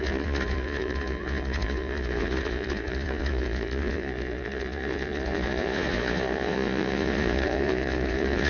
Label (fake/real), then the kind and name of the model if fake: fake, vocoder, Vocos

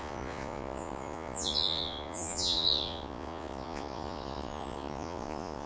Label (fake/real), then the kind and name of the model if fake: fake, vocoder, Vocos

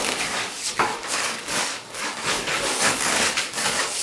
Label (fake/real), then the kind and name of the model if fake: fake, codec, DAC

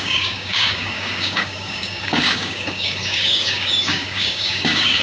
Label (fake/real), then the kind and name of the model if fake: fake, codec, DAC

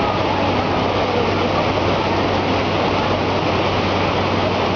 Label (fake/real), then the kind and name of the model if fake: real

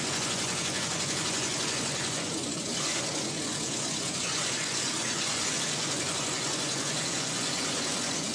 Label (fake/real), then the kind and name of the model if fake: fake, vocoder, Vocos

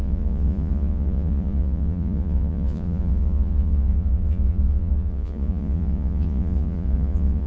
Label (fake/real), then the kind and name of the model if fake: fake, vocoder, Vocos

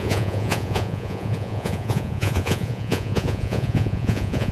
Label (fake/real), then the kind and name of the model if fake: fake, vocoder, Vocos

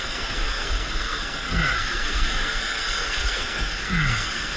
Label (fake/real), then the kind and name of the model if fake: fake, codec, SNAC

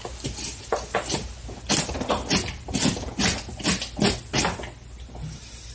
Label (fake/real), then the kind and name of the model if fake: real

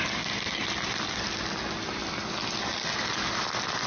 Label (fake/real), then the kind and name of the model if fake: real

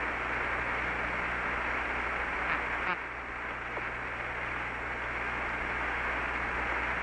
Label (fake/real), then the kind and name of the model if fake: real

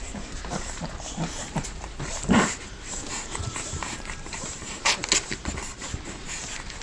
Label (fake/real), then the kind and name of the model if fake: fake, vocoder, BigVGAN v2